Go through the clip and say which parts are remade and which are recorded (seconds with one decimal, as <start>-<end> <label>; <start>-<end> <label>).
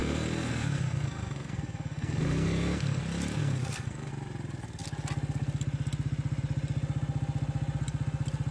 0.0-3.0 remade; 3.0-3.4 recorded; 3.4-4.1 remade; 4.1-8.5 recorded